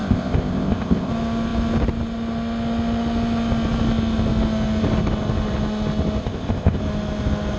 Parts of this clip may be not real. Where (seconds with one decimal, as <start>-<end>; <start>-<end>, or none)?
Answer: 0.0-1.1; 6.2-6.8